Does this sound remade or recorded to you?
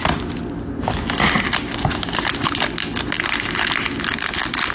recorded